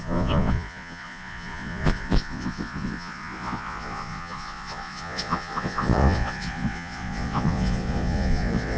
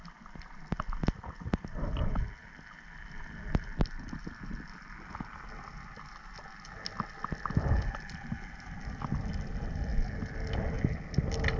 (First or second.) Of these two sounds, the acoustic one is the second